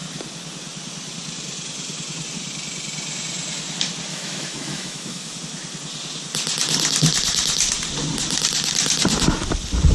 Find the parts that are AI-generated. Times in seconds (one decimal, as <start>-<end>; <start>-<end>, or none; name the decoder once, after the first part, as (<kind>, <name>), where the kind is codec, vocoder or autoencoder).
4.1-5.4 (autoencoder, DAC-VAE)